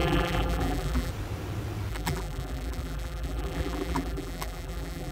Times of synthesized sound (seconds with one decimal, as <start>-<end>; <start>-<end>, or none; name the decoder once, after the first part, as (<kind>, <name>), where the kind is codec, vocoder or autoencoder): 0.0-1.1 (vocoder, BigVGAN v2); 1.9-5.1